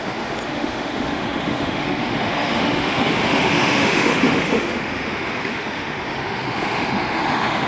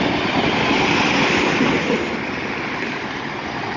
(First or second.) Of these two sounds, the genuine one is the second